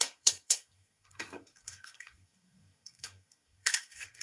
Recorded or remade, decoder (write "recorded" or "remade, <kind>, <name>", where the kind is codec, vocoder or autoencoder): remade, codec, SNAC